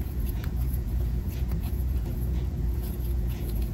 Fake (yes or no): yes